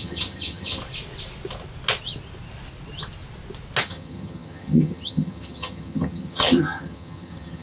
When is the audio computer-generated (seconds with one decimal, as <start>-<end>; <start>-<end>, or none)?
0.0-0.8; 3.8-7.6